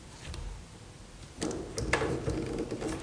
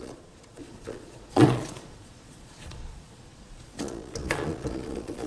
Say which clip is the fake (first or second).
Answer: second